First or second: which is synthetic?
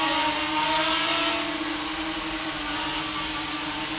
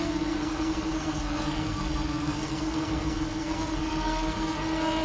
second